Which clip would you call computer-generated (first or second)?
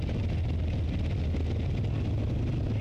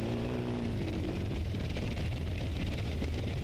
second